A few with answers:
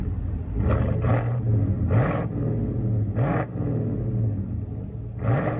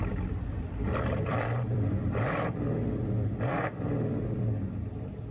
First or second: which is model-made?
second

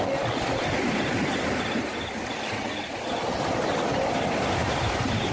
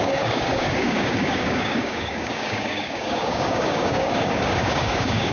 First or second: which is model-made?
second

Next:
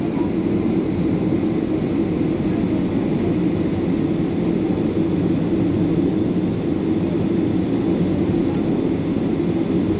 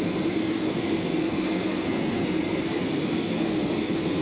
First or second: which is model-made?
second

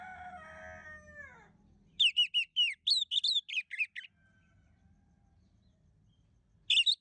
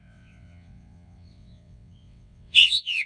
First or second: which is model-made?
second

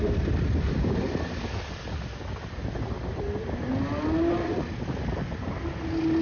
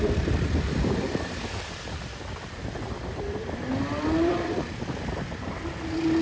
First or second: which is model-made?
second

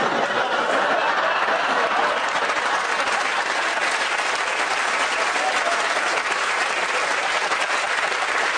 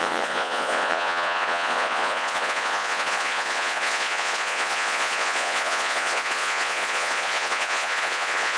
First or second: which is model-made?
second